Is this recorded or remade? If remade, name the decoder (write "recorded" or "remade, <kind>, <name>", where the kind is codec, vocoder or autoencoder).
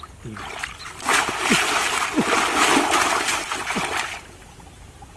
recorded